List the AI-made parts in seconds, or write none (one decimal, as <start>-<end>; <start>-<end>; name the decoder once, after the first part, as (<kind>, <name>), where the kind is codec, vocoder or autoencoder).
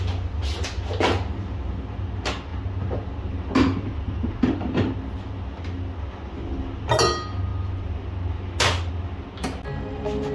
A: none